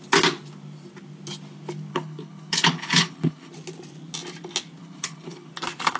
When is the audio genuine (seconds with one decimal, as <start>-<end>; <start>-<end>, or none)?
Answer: 0.0-1.9; 3.5-4.8; 5.5-6.0